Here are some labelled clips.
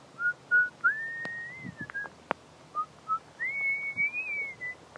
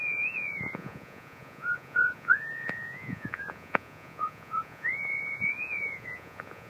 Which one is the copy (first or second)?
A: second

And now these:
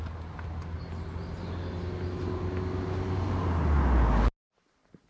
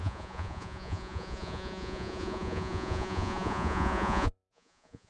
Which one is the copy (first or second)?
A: second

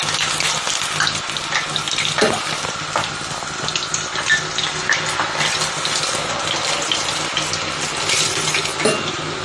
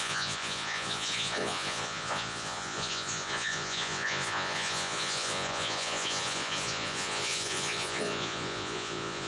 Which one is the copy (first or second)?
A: second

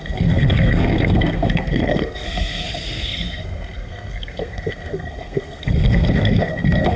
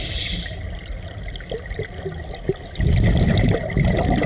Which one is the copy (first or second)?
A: first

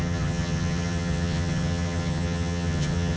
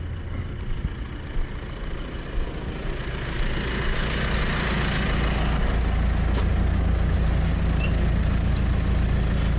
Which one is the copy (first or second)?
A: first